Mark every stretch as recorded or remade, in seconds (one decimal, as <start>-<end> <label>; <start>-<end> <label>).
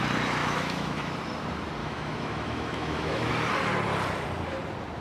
0.0-0.4 recorded; 0.4-1.1 remade; 1.1-1.8 recorded; 1.8-3.3 remade; 3.3-5.0 recorded